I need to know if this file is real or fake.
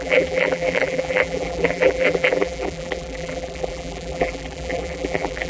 fake